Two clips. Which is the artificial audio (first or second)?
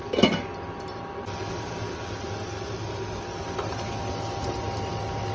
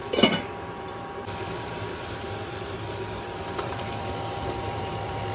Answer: second